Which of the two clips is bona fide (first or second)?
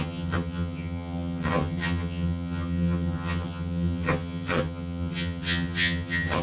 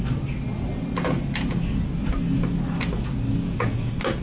second